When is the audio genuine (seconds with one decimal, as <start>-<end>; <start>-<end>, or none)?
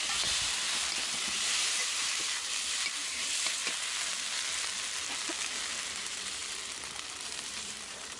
0.8-1.3; 3.6-5.8; 6.4-7.2